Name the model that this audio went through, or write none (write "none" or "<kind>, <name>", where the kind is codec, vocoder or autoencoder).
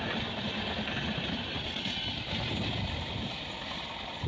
none